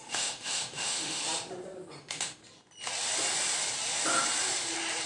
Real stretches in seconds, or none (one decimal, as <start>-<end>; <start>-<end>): 1.2-2.0; 2.4-5.1